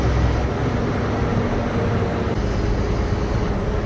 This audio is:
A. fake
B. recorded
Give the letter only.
B